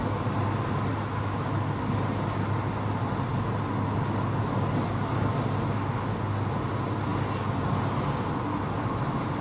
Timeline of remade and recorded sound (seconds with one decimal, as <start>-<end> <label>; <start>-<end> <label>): 0.0-9.4 recorded